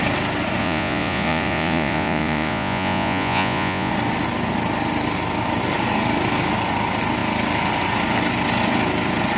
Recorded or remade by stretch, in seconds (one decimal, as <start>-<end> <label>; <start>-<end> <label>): 0.0-0.6 recorded; 0.6-3.9 remade; 3.9-9.4 recorded